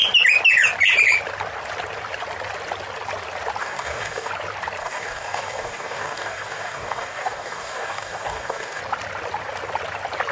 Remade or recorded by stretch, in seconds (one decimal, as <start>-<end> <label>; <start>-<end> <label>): 0.0-3.6 recorded; 3.6-4.3 remade; 4.3-4.8 recorded; 4.8-8.8 remade; 8.8-10.3 recorded